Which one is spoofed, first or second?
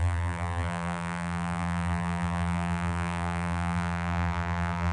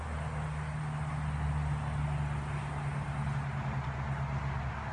first